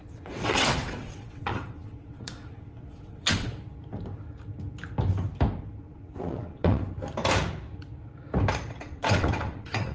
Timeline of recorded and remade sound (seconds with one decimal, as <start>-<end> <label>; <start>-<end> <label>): 0.0-3.5 remade; 3.5-5.9 recorded; 5.9-6.8 remade; 6.8-8.7 recorded; 8.7-9.9 remade